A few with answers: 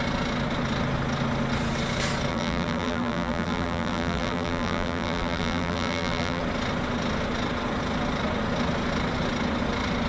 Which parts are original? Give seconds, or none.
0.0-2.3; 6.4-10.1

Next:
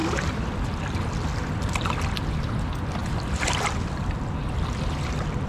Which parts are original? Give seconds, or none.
0.0-3.0; 4.4-5.5

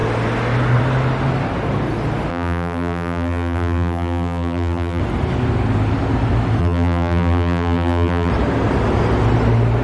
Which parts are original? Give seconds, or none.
0.0-2.3; 5.0-6.6; 8.3-9.8

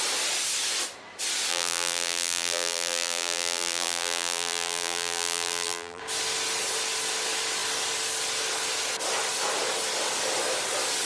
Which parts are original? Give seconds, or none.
0.0-1.5; 6.0-11.1